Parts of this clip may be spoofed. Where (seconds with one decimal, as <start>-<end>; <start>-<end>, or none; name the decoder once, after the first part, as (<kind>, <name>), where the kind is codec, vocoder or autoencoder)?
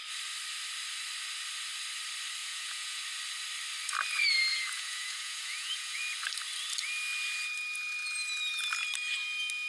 2.4-3.0 (vocoder, Vocos); 4.5-6.0